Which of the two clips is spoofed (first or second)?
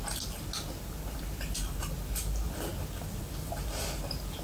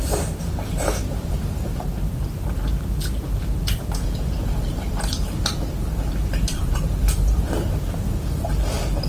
second